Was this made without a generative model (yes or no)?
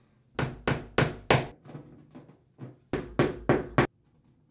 yes